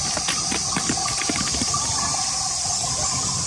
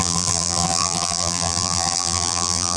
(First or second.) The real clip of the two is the first